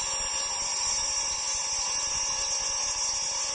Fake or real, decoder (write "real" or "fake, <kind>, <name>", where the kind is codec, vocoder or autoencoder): real